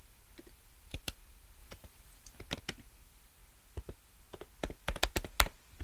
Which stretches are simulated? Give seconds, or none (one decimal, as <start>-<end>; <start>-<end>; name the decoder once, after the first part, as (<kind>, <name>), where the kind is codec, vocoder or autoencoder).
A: 0.0-3.4 (vocoder, BigVGAN v2)